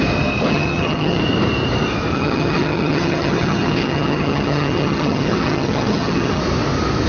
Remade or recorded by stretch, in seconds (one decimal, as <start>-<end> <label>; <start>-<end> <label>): 0.0-0.5 recorded; 0.5-1.2 remade; 1.2-2.1 recorded; 2.1-6.4 remade; 6.4-7.1 recorded